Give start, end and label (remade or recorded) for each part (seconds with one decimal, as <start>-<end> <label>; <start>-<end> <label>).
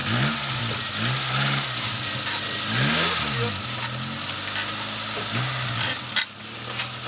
0.0-7.1 recorded